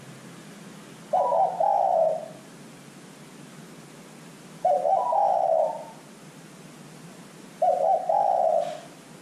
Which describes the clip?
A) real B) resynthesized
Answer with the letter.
A